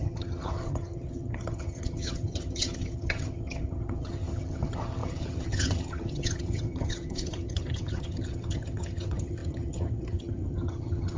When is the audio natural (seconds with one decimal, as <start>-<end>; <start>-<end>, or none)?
none